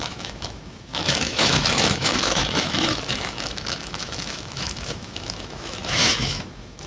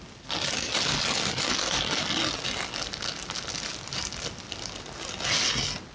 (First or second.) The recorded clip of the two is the second